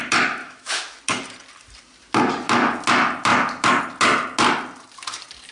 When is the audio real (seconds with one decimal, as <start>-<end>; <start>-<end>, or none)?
0.0-0.4; 1.0-5.5